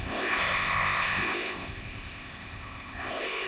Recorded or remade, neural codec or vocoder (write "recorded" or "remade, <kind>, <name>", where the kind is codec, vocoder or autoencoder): remade, codec, ZipCodec